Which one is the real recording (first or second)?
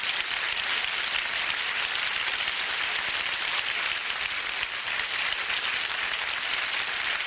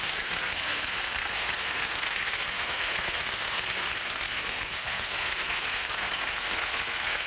first